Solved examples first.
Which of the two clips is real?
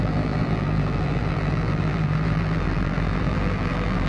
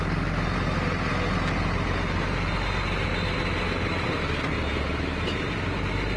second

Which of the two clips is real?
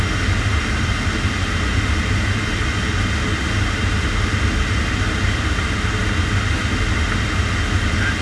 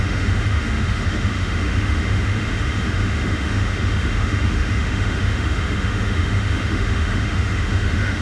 first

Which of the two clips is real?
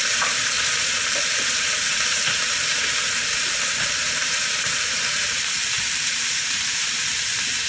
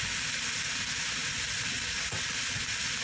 second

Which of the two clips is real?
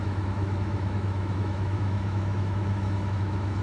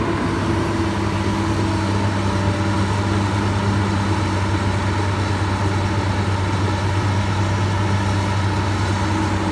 second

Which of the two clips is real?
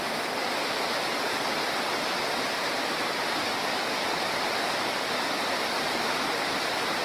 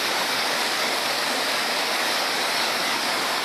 first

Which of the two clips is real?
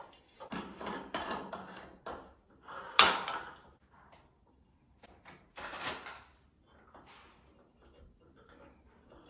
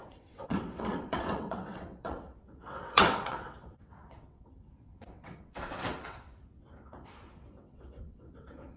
first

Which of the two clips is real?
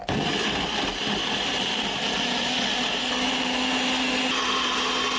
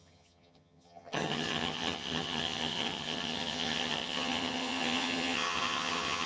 first